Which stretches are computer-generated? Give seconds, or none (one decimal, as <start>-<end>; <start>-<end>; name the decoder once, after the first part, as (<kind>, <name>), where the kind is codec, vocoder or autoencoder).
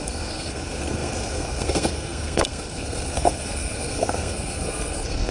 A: 0.0-5.3 (codec, SNAC)